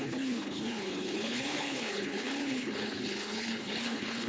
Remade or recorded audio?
remade